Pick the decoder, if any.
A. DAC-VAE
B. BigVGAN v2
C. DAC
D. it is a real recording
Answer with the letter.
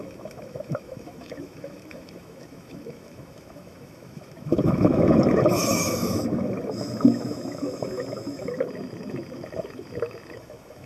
A